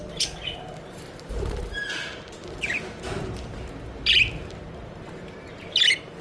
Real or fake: real